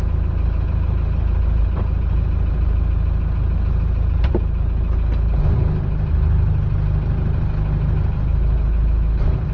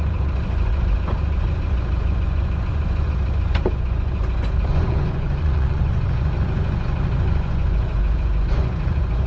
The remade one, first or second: second